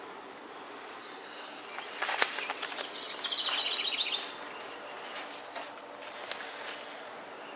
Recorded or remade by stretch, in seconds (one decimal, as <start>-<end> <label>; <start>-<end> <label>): 0.0-1.0 recorded; 1.0-1.6 remade; 1.6-7.6 recorded